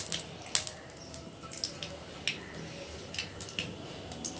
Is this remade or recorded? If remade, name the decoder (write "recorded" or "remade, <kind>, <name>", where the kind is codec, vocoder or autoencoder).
recorded